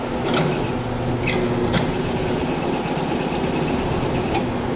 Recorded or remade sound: recorded